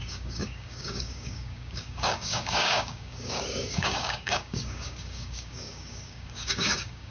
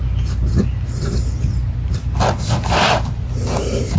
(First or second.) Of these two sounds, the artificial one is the first